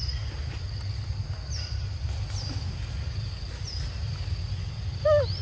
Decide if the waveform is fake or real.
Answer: real